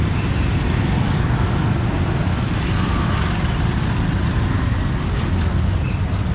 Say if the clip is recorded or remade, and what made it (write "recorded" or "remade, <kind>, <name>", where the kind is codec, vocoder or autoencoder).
recorded